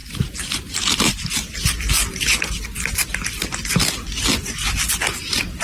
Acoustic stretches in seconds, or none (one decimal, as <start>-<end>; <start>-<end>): 1.9-5.6